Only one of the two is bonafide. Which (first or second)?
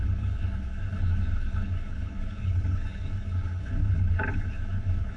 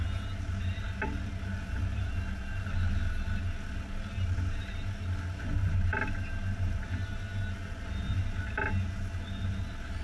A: second